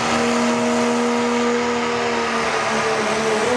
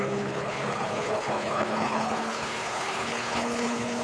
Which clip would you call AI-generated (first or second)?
second